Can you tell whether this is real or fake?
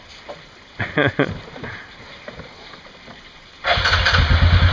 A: real